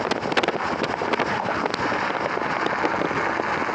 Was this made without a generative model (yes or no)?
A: yes